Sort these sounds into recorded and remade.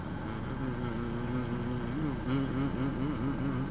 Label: recorded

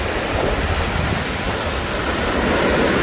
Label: recorded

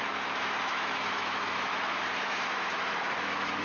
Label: remade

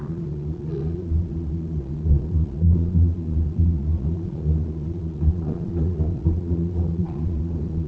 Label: remade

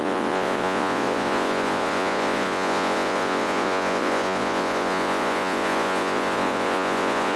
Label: remade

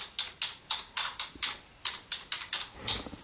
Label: recorded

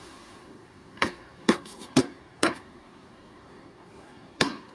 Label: remade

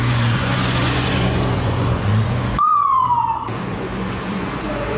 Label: remade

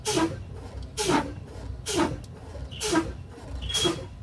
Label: recorded